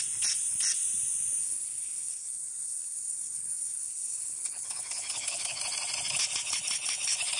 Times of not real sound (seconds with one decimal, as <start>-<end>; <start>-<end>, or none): 1.4-5.6